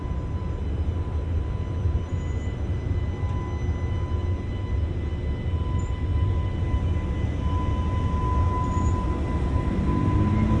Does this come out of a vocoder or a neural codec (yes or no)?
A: no